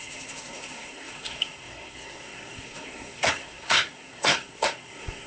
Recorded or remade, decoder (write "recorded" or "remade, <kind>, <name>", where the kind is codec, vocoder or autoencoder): remade, codec, SNAC